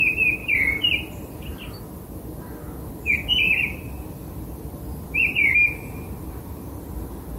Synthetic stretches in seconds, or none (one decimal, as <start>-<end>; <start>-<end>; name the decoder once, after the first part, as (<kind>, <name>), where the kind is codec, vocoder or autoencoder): 0.4-1.1 (vocoder, BigVGAN v2); 1.5-2.3